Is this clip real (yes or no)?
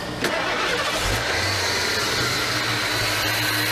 yes